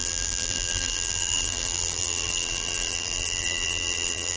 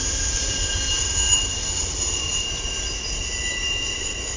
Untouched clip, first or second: second